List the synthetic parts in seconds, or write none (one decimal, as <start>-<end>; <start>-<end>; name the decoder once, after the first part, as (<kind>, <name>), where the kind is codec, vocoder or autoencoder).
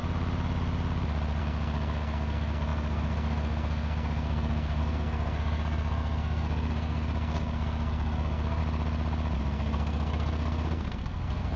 1.4-8.6 (codec, SNAC); 9.4-11.6